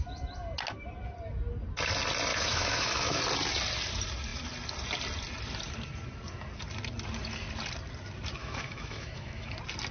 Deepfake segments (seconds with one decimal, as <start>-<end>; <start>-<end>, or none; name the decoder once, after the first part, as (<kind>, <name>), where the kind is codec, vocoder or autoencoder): 2.3-3.2 (autoencoder, DAC-VAE); 8.4-9.5